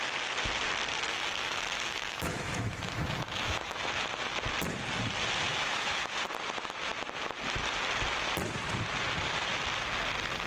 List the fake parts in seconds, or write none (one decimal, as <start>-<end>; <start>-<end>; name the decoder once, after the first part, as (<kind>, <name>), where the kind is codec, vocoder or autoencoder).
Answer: 1.1-3.8 (autoencoder, DAC-VAE); 5.5-6.2